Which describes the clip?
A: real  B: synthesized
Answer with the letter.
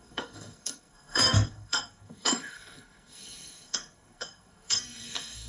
B